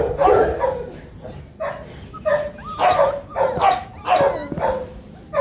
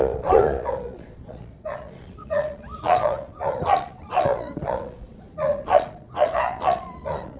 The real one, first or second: first